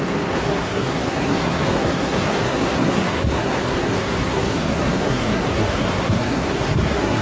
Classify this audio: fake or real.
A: fake